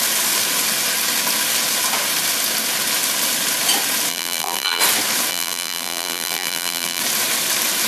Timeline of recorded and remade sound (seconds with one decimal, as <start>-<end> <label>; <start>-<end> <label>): 0.0-4.1 recorded; 4.1-4.8 remade; 4.8-5.3 recorded; 5.3-7.0 remade; 7.0-7.9 recorded